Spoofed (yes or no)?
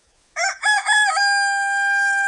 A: yes